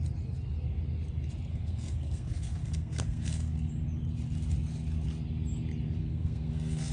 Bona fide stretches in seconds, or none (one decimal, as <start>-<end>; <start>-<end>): 0.0-1.5; 3.7-6.0